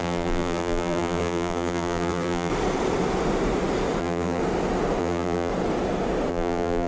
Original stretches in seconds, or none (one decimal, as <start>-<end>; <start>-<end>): 2.5-4.0; 4.4-5.0; 5.5-6.3